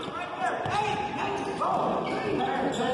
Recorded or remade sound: recorded